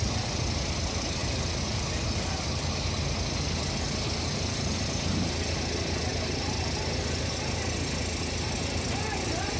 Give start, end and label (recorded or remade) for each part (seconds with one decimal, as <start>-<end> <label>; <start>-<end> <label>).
0.0-9.6 recorded